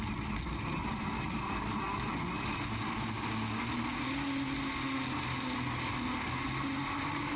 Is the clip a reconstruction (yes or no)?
no